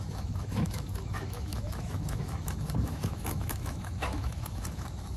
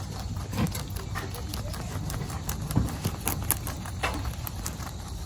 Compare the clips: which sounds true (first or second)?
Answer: second